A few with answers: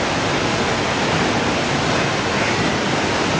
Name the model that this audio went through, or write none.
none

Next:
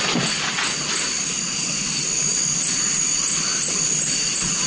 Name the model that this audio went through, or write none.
none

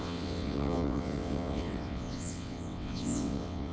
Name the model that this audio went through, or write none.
vocoder, WaveNeXt